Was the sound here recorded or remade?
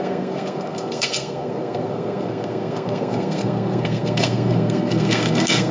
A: remade